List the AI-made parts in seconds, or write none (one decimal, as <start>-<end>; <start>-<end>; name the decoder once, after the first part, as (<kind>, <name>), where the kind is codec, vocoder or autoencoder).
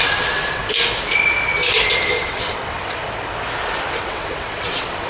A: 0.0-0.6 (vocoder, WaveNeXt); 2.2-3.0; 3.9-5.1